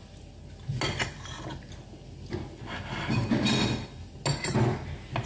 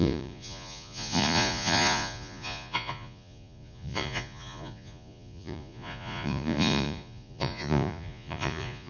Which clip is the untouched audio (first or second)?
first